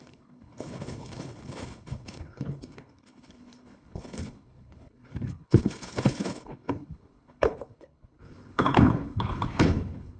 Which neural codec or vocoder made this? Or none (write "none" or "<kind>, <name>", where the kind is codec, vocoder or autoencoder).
codec, HILCodec